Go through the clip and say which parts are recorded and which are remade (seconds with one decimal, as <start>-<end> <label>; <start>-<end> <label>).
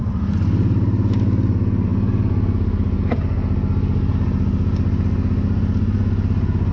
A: 0.0-6.7 recorded